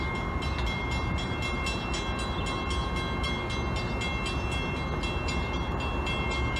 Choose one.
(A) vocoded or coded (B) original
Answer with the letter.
B